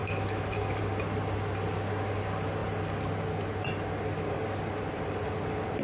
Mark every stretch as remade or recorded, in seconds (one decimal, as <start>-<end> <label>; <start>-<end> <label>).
0.0-0.8 remade; 0.8-5.8 recorded